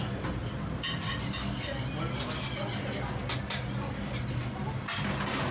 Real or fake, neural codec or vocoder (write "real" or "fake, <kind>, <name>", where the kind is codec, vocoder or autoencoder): real